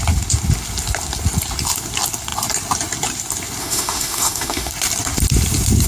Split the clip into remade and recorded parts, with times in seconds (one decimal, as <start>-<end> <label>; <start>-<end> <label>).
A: 0.0-3.6 recorded; 3.6-4.7 remade; 4.7-5.9 recorded